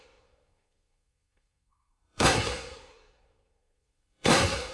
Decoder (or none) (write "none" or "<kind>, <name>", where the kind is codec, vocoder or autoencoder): codec, SNAC